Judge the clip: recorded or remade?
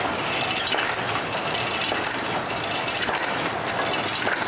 recorded